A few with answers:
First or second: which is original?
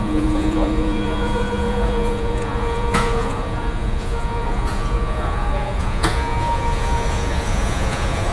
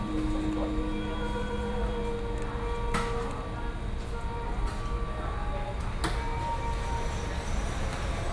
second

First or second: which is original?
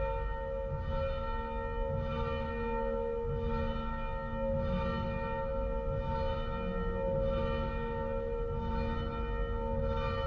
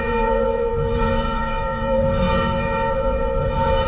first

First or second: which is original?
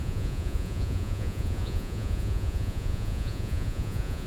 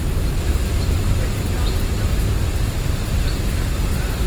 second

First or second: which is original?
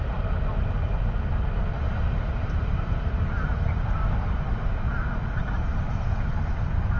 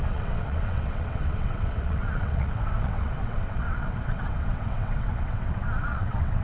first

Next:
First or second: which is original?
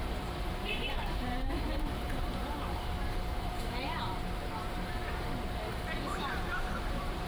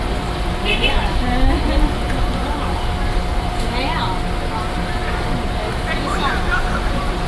second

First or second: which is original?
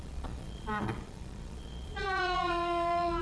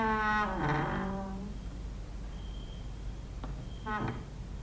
second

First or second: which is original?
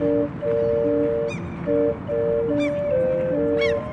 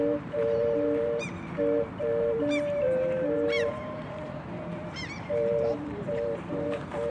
first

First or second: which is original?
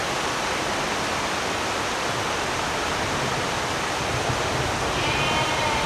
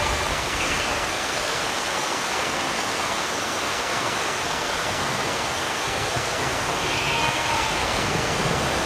first